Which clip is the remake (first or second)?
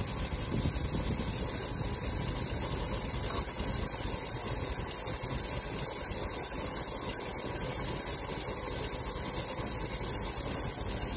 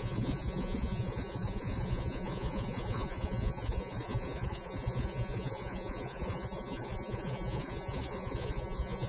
second